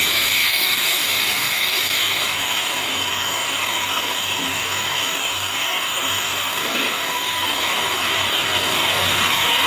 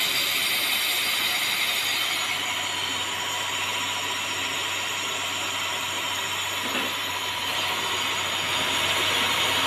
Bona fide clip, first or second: second